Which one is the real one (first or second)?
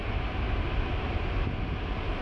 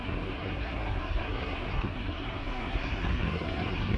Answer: first